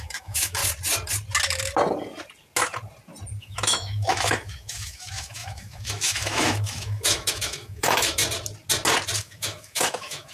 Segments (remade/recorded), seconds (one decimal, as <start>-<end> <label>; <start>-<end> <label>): 0.0-0.6 remade; 0.6-3.4 recorded; 3.4-8.2 remade; 8.2-9.2 recorded; 9.2-10.3 remade